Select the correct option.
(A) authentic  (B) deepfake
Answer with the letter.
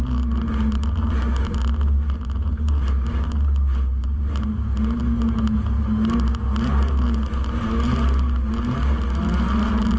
A